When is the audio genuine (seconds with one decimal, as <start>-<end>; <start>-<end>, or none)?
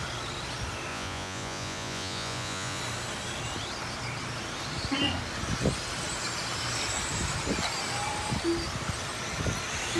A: 0.0-0.9; 2.8-10.0